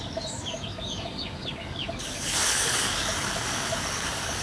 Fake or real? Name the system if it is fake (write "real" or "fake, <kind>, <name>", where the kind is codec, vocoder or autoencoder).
fake, codec, DAC